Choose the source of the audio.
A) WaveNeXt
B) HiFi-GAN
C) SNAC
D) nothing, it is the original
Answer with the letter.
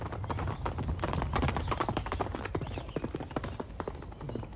D